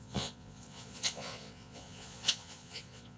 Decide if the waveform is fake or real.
fake